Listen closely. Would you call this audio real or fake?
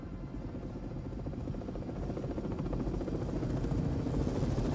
real